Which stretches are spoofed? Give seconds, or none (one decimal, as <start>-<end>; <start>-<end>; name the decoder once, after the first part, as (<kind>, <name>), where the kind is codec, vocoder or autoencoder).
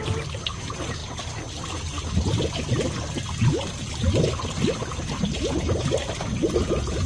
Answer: none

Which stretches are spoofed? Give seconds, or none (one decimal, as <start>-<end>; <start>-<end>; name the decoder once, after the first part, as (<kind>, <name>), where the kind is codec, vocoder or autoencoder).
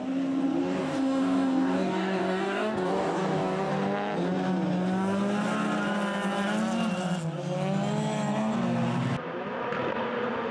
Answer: 0.6-3.7 (codec, DAC)